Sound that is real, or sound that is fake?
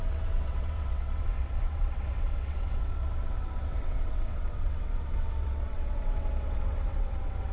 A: fake